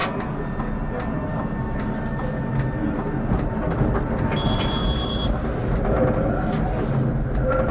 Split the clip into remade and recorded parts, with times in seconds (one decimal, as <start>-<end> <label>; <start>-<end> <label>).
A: 0.0-7.7 recorded